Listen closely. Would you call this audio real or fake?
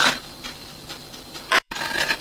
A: fake